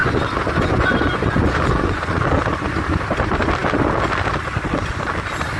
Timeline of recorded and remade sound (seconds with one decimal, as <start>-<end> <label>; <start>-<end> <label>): 0.0-2.2 remade; 2.2-5.6 recorded